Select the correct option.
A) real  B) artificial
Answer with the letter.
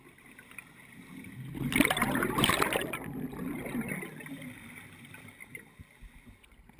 A